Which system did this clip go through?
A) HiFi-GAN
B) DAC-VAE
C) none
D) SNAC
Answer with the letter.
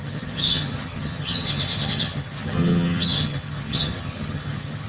A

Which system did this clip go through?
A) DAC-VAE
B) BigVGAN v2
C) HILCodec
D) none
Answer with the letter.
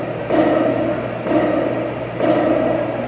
D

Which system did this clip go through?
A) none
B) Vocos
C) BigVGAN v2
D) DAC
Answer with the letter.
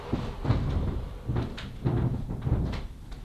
C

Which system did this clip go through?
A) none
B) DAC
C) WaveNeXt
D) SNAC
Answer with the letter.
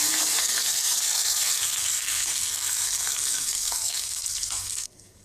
D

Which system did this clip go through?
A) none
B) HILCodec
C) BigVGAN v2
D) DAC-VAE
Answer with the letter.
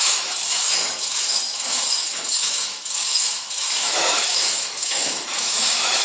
D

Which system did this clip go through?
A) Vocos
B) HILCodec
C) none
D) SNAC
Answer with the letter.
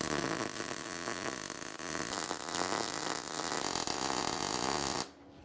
C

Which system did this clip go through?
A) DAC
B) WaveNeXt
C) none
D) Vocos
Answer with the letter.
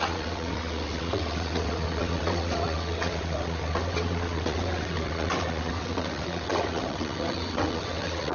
B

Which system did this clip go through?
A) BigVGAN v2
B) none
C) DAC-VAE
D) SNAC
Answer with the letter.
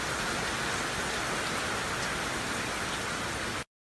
B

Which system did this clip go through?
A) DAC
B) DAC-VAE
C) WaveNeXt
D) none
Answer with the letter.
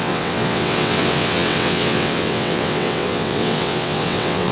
C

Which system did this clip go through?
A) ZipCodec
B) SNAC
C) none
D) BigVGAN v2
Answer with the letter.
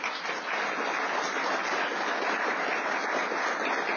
C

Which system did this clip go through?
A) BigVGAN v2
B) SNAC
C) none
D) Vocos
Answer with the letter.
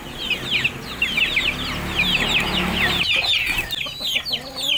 C